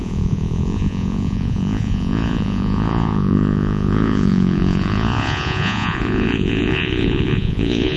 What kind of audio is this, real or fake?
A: fake